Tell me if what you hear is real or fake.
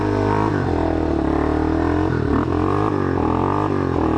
real